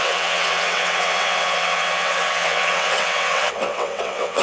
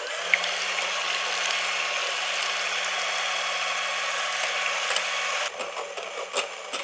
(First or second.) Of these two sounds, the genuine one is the second